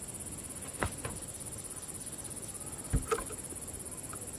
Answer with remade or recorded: recorded